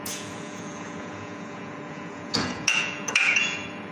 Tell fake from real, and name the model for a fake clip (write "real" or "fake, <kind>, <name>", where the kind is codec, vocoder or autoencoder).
fake, vocoder, Vocos